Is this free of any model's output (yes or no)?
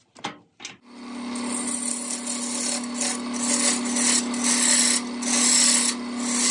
yes